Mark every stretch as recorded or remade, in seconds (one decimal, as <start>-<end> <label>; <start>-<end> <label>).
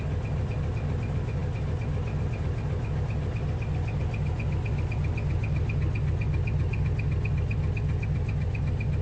0.0-9.0 recorded